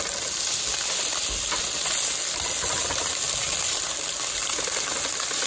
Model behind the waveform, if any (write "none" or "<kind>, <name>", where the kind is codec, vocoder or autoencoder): none